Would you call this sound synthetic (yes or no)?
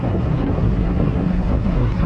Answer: yes